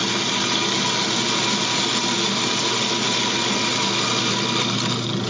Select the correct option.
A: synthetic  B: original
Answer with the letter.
B